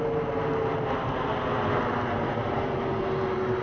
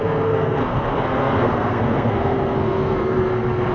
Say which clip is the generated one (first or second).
second